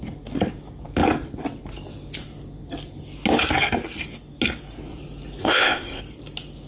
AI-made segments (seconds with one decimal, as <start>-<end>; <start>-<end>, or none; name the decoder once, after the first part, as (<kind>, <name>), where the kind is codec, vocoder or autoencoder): 5.4-6.0 (codec, ZipCodec)